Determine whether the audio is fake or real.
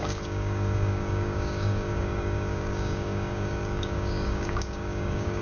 fake